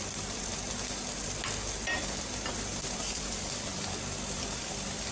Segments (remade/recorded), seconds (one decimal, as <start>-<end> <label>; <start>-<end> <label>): 0.0-2.7 recorded; 2.7-5.1 remade